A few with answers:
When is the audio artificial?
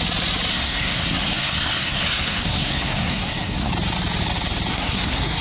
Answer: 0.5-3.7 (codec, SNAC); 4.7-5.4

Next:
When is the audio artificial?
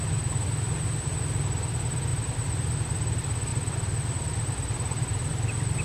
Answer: none